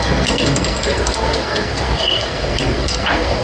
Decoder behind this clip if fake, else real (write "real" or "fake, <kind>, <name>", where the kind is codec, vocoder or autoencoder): fake, codec, SNAC